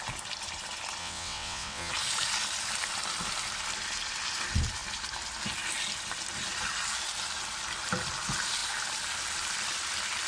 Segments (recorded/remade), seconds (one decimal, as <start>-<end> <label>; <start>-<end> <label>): 0.0-1.0 recorded; 1.0-1.9 remade; 1.9-10.3 recorded